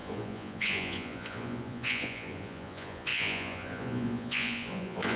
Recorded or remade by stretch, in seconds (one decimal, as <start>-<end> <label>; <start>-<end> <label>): 0.0-5.2 remade